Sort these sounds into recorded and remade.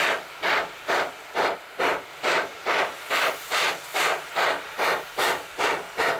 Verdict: recorded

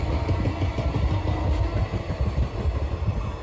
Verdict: recorded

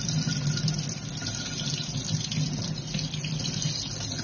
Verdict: recorded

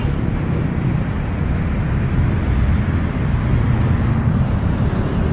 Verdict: remade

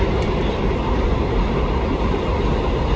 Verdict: remade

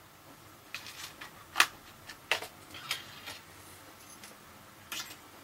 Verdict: recorded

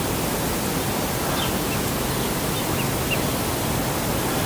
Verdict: recorded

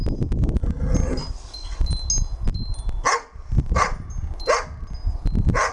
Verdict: recorded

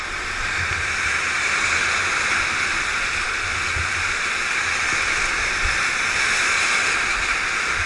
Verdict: recorded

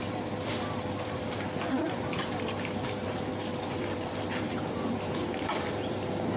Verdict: remade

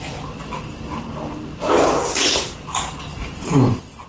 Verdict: recorded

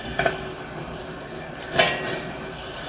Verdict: remade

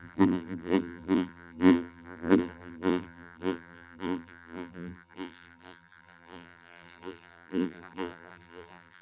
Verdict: remade